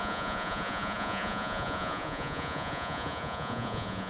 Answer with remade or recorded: remade